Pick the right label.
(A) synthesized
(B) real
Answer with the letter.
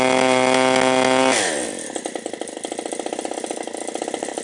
B